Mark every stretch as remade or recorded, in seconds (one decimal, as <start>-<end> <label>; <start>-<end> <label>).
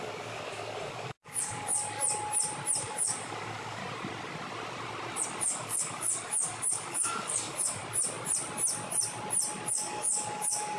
0.0-1.8 remade; 1.8-2.8 recorded; 2.8-3.8 remade; 3.8-5.4 recorded; 5.4-7.8 remade; 7.8-9.7 recorded; 9.7-10.8 remade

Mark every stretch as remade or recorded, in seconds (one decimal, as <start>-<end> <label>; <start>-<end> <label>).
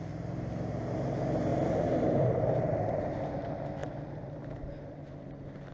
0.0-1.5 recorded; 1.5-3.3 remade; 3.3-3.8 recorded; 3.8-5.7 remade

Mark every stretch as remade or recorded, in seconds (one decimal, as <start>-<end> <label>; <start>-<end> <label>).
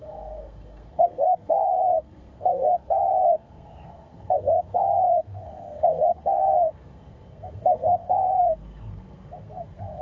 0.0-10.0 remade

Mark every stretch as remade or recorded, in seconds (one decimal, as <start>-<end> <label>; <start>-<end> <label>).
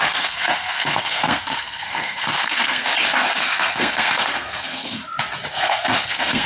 0.0-2.8 remade; 2.8-3.4 recorded; 3.4-5.0 remade; 5.0-5.5 recorded; 5.5-6.5 remade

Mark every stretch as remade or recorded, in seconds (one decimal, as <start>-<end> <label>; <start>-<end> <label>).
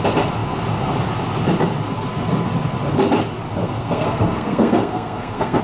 0.0-3.6 recorded; 3.6-5.6 remade